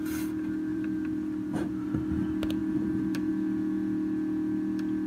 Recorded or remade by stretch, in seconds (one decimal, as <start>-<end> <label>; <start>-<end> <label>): 0.0-0.7 recorded; 0.7-2.0 remade; 2.0-2.6 recorded; 2.6-3.3 remade; 3.3-5.1 recorded